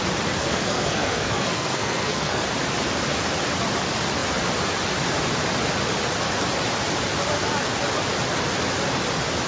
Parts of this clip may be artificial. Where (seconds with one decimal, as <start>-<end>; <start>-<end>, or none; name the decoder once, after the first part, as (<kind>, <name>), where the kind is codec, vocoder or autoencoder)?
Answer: 0.4-2.4 (codec, SNAC)